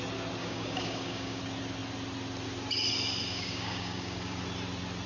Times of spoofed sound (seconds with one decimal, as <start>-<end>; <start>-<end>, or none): 0.4-1.4; 3.3-4.4